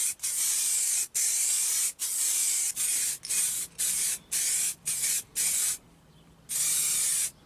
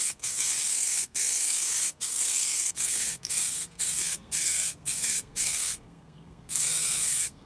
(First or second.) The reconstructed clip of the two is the second